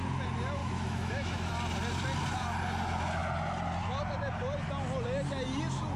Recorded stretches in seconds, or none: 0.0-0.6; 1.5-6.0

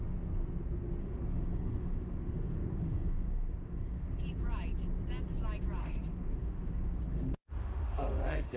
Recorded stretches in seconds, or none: 0.0-1.0; 4.2-5.8

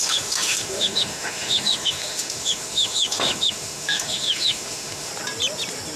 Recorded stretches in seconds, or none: 5.1-6.0

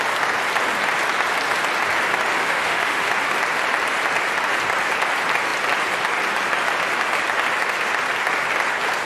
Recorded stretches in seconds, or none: 0.0-2.4; 3.1-9.0

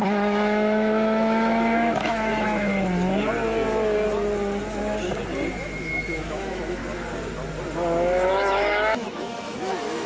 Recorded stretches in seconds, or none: 2.7-5.6; 6.8-8.3

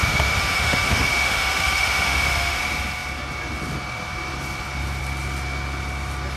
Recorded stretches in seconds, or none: 2.6-6.4